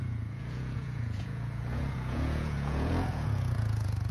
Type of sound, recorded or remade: remade